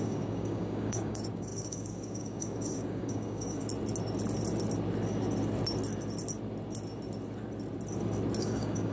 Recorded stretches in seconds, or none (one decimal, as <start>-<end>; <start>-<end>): 3.7-8.4